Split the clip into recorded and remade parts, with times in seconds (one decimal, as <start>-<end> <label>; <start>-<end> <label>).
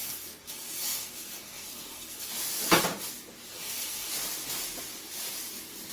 0.0-2.3 remade; 2.3-3.5 recorded; 3.5-4.1 remade; 4.1-5.9 recorded